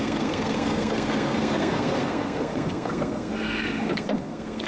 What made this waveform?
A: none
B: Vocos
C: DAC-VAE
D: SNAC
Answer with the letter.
D